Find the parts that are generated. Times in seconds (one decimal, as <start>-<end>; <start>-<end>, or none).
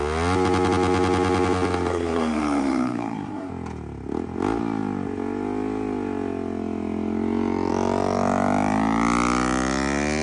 1.9-3.5